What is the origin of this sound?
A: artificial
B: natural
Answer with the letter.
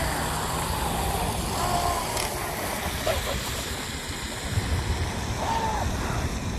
B